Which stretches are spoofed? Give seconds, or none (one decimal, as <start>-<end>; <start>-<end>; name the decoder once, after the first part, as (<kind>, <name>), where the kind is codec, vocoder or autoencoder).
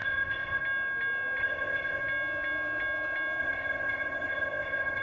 0.0-0.6 (codec, ZipCodec); 1.4-2.0; 3.4-5.0